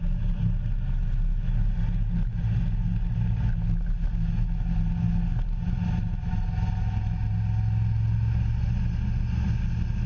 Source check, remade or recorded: recorded